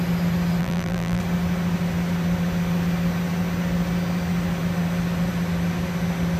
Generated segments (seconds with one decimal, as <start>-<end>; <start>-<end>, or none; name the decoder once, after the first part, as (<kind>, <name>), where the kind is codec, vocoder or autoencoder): 0.6-1.2 (vocoder, BigVGAN v2)

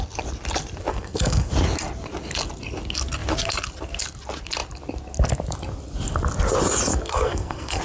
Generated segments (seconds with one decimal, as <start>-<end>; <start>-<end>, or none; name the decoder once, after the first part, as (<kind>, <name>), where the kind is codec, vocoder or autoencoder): 0.9-1.5 (codec, SNAC); 6.9-7.8

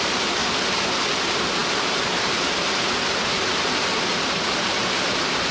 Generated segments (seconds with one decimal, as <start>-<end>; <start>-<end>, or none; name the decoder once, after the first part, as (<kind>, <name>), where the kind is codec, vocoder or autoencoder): 0.0-0.4 (vocoder, BigVGAN v2); 1.1-5.5

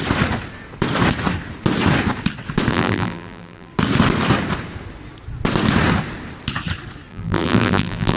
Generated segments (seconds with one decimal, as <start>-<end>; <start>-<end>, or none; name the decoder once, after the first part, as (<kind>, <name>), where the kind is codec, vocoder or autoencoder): 2.7-3.7 (vocoder, BigVGAN v2); 7.1-8.2

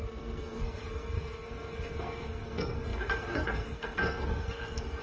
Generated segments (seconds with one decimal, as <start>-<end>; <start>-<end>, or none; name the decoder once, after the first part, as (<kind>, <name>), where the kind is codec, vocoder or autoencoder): 0.0-5.0 (codec, SNAC)